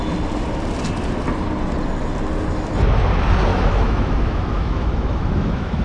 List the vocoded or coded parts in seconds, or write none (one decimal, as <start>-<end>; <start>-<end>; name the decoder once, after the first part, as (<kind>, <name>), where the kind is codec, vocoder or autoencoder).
3.5-5.8 (autoencoder, DAC-VAE)